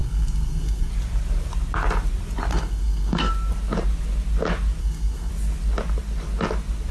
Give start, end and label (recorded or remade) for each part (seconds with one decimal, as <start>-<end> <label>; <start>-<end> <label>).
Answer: 0.0-0.9 remade; 0.9-2.5 recorded; 2.5-3.3 remade; 3.3-4.8 recorded; 4.8-5.3 remade; 5.3-6.9 recorded